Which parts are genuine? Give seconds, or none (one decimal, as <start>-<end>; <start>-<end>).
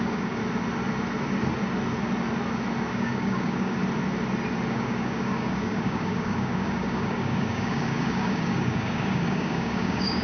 0.4-2.9; 3.8-4.7